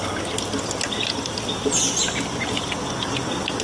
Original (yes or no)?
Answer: yes